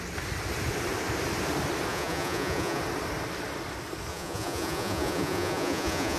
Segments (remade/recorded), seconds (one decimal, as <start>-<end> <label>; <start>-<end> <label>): 0.0-1.9 recorded; 1.9-2.8 remade; 2.8-4.1 recorded; 4.1-6.2 remade